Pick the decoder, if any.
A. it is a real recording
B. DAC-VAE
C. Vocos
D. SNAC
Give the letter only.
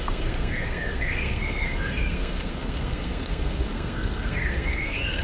D